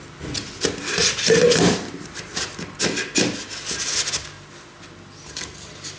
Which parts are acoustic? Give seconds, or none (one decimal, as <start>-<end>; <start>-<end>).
0.0-6.0